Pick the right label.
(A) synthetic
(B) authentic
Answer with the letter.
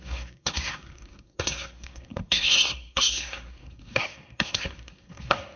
A